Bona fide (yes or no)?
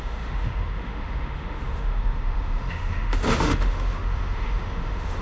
no